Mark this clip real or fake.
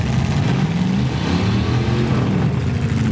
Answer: real